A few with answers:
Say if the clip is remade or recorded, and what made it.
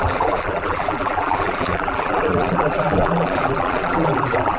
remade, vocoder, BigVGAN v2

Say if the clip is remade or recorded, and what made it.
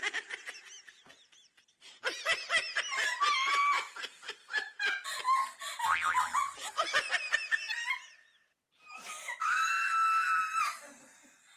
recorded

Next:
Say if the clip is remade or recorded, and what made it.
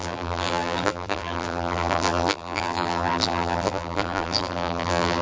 remade, vocoder, BigVGAN v2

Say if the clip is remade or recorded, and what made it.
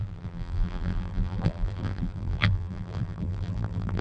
remade, vocoder, BigVGAN v2